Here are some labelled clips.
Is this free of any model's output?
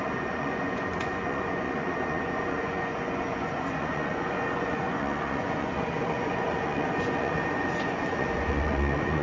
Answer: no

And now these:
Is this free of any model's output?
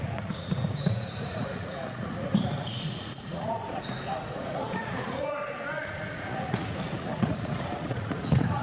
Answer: no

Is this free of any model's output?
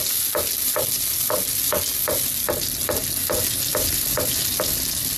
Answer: yes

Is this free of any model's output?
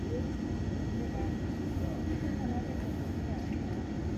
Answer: yes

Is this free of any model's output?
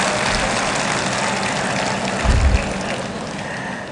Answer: yes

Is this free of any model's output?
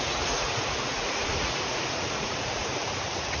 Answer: no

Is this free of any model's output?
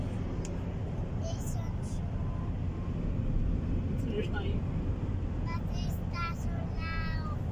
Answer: yes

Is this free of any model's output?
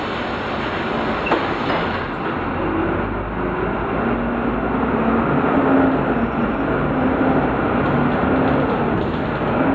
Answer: yes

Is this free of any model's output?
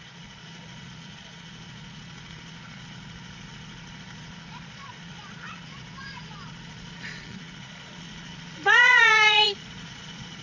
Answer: no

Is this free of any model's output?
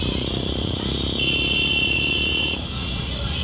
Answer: no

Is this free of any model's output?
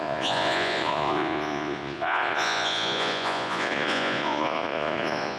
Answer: no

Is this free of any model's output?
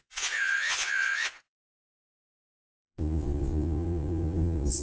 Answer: no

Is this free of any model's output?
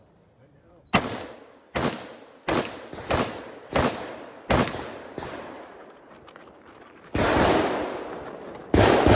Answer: yes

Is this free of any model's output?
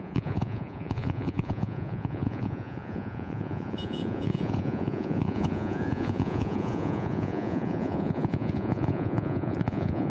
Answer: no